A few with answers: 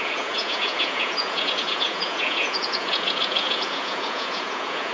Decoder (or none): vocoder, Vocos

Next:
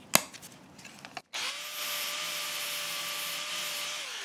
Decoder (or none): none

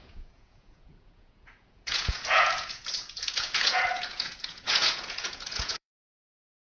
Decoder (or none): vocoder, Vocos